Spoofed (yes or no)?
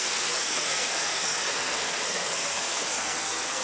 yes